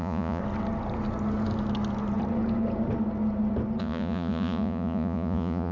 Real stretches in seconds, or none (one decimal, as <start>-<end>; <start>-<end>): 0.4-3.8